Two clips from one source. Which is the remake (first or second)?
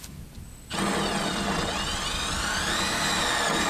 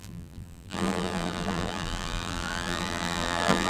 second